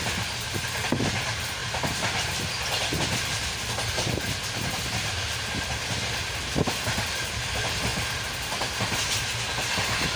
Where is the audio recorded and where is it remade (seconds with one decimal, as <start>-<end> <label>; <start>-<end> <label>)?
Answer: 0.0-10.2 recorded